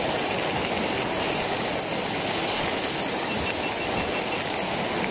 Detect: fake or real real